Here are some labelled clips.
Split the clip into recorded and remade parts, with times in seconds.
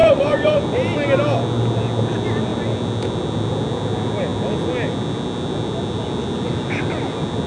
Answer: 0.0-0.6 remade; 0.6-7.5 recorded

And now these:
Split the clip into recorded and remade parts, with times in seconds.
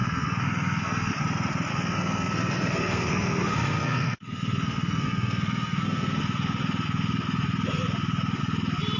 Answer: 0.0-1.1 remade; 1.1-1.7 recorded; 1.7-6.2 remade; 6.2-9.0 recorded